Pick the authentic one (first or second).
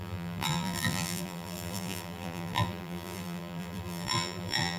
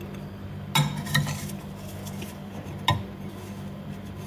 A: second